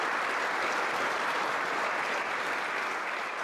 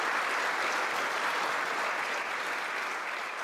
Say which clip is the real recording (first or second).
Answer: second